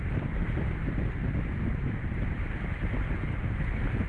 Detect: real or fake real